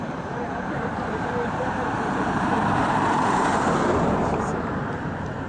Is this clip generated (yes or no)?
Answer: yes